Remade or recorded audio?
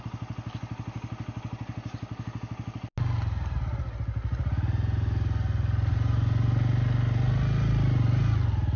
recorded